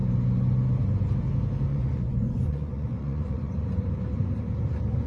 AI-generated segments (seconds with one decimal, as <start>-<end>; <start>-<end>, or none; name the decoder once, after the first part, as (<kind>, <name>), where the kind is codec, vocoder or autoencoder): 1.7-3.7 (vocoder, Vocos)

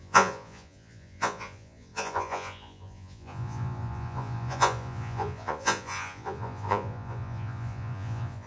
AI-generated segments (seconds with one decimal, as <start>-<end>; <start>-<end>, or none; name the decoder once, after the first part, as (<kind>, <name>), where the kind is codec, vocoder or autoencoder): 0.0-8.5 (vocoder, Vocos)

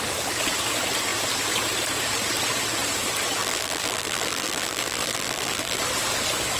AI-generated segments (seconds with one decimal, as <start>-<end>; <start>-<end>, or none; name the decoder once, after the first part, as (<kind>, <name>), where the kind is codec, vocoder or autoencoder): 3.4-5.8 (vocoder, BigVGAN v2)